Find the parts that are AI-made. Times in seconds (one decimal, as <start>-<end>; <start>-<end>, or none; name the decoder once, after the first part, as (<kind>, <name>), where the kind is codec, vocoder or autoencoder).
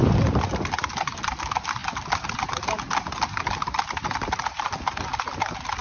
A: none